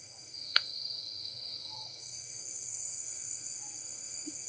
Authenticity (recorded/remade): remade